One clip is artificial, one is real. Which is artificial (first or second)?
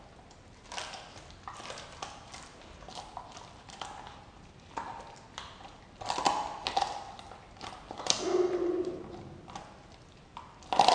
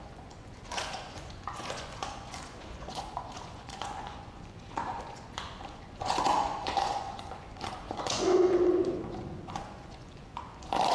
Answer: second